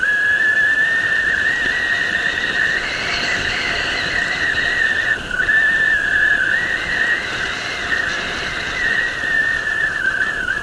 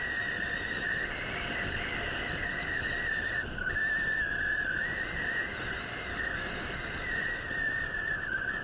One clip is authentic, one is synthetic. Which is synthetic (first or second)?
first